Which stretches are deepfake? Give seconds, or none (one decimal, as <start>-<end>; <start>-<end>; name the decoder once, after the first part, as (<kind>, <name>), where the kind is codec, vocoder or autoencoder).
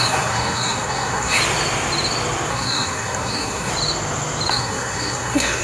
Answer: 0.0-1.4 (codec, SNAC); 2.5-3.7; 4.5-5.6